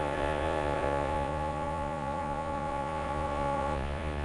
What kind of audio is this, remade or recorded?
remade